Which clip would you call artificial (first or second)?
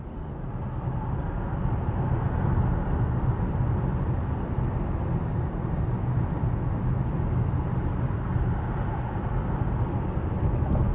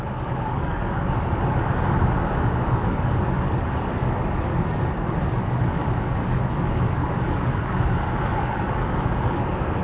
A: second